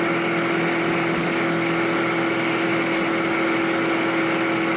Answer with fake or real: real